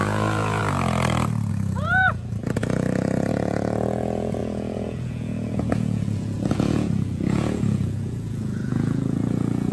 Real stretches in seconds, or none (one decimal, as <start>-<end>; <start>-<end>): 0.6-1.5